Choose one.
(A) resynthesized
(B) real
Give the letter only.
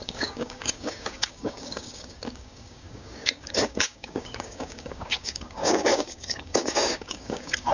A